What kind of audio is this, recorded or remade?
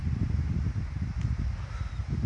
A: recorded